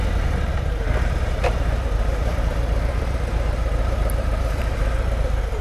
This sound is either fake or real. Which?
fake